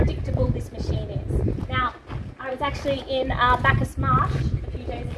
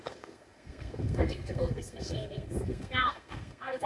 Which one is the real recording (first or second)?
first